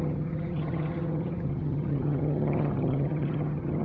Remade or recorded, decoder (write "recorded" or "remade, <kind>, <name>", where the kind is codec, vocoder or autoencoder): remade, vocoder, HiFi-GAN